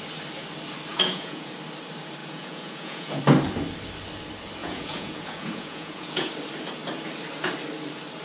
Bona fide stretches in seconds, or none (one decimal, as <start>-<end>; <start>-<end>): 0.0-0.9; 1.5-2.2; 3.2-4.6; 6.3-8.2